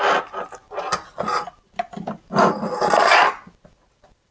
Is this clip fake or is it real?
real